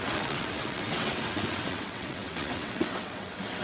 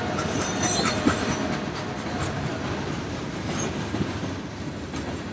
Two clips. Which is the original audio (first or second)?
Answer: second